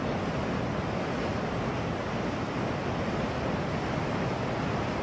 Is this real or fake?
real